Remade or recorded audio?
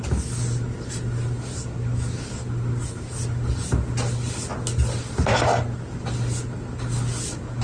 recorded